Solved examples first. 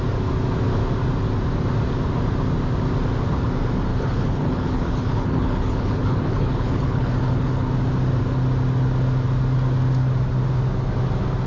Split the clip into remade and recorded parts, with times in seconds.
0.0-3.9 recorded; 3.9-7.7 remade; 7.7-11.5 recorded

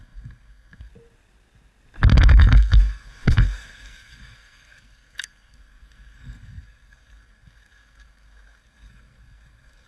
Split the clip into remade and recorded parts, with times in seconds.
0.0-0.9 remade; 0.9-2.1 recorded; 2.1-9.9 remade

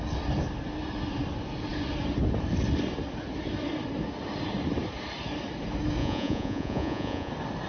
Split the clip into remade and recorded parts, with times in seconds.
0.0-6.0 recorded; 6.0-7.3 remade; 7.3-7.7 recorded

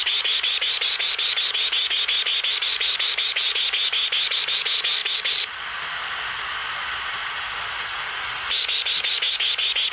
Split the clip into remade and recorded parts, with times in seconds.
0.0-6.6 recorded; 6.6-7.3 remade; 7.3-9.9 recorded

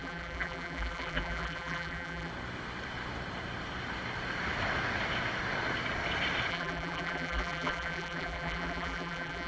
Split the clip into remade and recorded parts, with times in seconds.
0.0-2.3 remade; 2.3-6.5 recorded; 6.5-9.5 remade

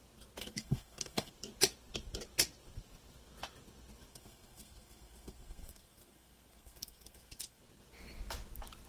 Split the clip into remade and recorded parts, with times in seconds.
0.0-0.4 recorded; 0.4-1.3 remade; 1.3-4.1 recorded; 4.1-7.6 remade; 7.6-8.9 recorded

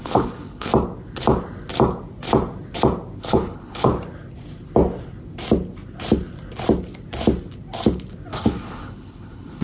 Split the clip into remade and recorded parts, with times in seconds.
0.0-0.7 remade; 0.7-3.2 recorded; 3.2-3.9 remade; 3.9-8.3 recorded; 8.3-9.6 remade

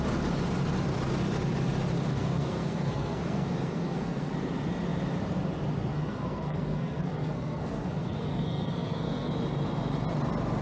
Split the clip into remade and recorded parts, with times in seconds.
0.0-2.1 recorded; 2.1-4.3 remade; 4.3-5.9 recorded; 5.9-9.3 remade; 9.3-10.6 recorded